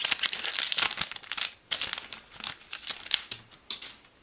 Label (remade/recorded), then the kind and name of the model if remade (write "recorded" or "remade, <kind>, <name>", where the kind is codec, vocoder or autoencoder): recorded